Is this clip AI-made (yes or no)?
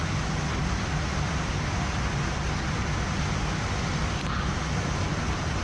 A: no